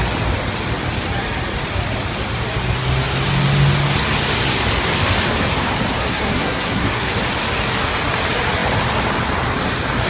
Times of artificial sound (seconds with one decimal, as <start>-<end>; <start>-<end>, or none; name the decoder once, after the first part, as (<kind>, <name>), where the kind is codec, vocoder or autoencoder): 6.0-7.1 (codec, SNAC)